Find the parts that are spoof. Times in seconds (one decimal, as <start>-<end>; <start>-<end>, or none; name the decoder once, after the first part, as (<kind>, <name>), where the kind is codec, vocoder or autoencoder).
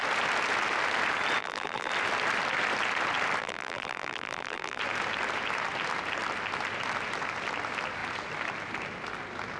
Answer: 1.4-1.9 (vocoder, BigVGAN v2); 3.4-4.8